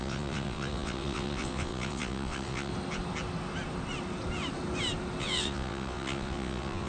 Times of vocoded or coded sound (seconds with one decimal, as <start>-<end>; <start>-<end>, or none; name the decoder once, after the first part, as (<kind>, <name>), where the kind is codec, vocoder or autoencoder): 0.0-2.7 (vocoder, WaveNeXt); 5.2-6.9

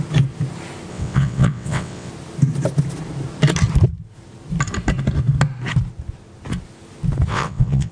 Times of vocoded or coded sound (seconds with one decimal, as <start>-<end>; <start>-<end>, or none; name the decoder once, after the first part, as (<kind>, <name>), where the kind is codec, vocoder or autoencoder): 0.9-2.1 (vocoder, WaveNeXt); 7.3-7.9